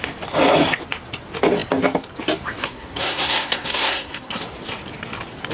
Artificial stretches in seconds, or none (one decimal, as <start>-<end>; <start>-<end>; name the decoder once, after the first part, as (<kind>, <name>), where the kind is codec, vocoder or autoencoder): 2.6-4.4 (codec, SNAC)